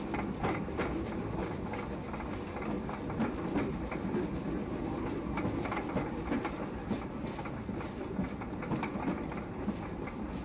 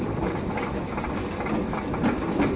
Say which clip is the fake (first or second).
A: second